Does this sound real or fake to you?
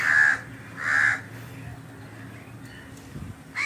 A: real